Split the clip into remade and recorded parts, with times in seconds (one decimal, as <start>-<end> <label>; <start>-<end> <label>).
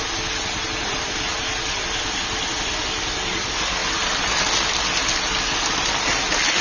0.0-6.6 recorded